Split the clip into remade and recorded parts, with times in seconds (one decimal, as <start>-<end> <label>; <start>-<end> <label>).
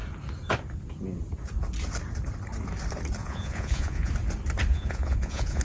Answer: 0.0-3.2 recorded; 3.2-4.1 remade; 4.1-4.7 recorded; 4.7-5.6 remade